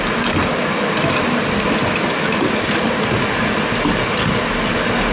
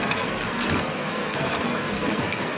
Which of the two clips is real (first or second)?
first